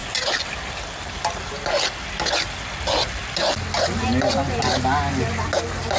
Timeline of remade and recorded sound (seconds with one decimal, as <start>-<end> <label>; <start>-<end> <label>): 0.0-6.0 recorded